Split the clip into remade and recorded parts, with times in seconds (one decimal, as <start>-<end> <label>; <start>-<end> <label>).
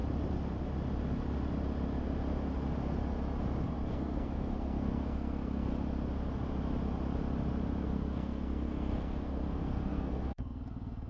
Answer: 0.0-3.9 recorded; 3.9-5.7 remade; 5.7-7.8 recorded; 7.8-11.1 remade